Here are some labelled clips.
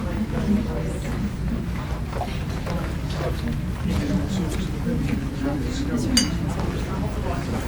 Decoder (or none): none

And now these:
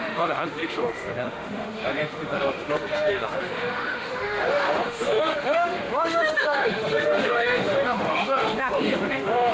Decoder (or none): autoencoder, DAC-VAE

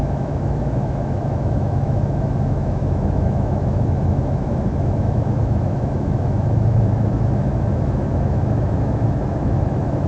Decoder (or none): autoencoder, DAC-VAE